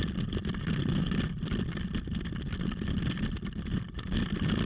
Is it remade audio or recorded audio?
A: recorded